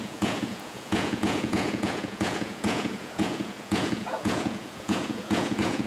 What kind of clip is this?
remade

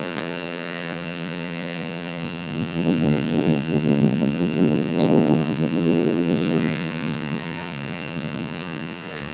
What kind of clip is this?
remade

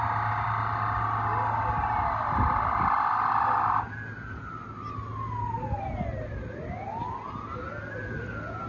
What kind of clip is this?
recorded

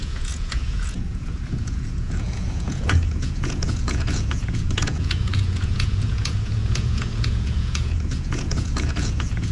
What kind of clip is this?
remade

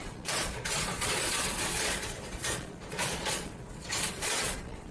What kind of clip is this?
remade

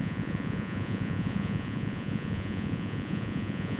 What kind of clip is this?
remade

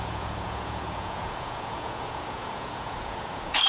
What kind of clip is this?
remade